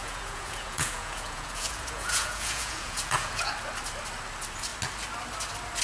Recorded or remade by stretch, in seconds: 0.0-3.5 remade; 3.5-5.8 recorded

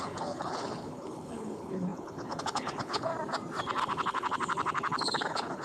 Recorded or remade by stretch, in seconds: 0.0-3.1 remade; 3.1-3.8 recorded; 3.8-5.6 remade

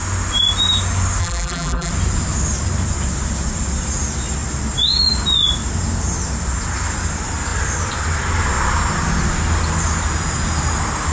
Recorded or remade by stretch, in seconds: 0.0-1.2 recorded; 1.2-1.9 remade; 1.9-11.1 recorded

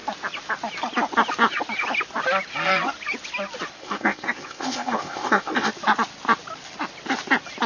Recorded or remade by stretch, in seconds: 0.0-3.8 recorded; 3.8-5.7 remade; 5.7-7.7 recorded

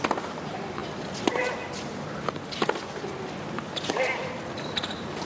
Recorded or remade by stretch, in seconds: 0.0-5.2 recorded